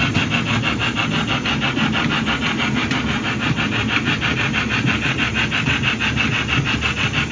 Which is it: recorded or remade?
recorded